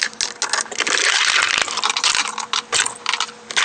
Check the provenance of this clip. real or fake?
real